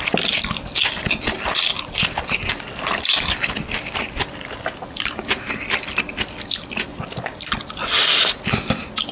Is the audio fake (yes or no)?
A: no